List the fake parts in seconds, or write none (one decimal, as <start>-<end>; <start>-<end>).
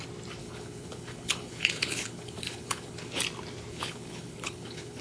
0.4-3.2; 3.7-5.0